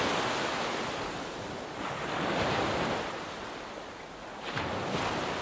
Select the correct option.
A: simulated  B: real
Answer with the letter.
B